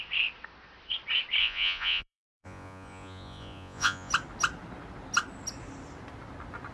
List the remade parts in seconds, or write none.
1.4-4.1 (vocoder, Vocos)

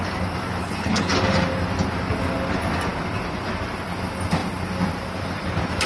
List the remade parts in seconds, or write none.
0.6-1.1 (codec, HILCodec)

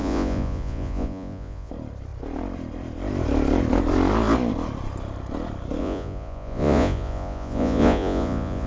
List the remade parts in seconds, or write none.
0.0-1.7 (vocoder, Vocos); 5.8-8.7

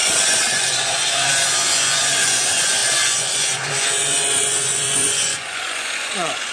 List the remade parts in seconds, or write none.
0.0-6.5 (vocoder, Vocos)

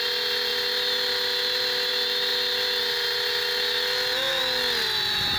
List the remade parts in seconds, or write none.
none